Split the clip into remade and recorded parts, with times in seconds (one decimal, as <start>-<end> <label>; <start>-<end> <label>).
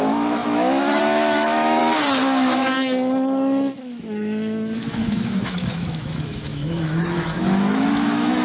0.0-1.8 remade; 1.8-2.6 recorded; 2.6-8.4 remade